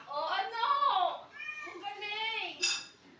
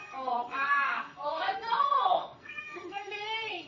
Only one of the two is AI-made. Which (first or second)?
second